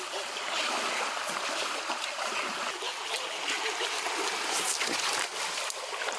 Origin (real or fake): real